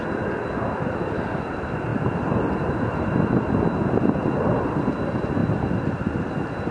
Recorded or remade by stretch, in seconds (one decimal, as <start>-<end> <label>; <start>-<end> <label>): 0.0-6.7 recorded